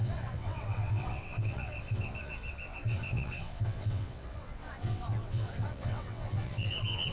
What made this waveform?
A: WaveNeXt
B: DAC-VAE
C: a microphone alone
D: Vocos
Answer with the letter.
A